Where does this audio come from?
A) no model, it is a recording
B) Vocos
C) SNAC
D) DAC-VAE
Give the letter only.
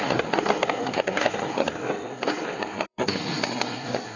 C